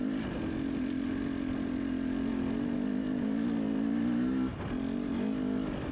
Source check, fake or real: real